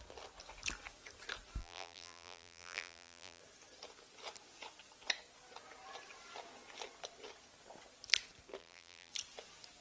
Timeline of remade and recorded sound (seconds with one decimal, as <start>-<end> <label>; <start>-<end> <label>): 0.0-1.6 recorded; 1.6-3.4 remade; 3.4-8.6 recorded; 8.6-9.1 remade; 9.1-9.8 recorded